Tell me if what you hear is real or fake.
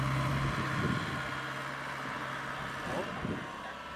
real